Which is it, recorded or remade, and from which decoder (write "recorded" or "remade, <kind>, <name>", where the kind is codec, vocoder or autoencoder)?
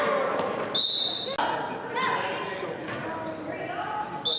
recorded